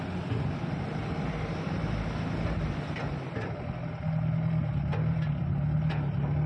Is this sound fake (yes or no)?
no